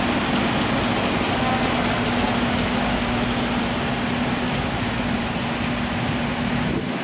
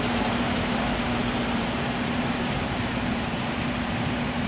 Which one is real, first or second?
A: first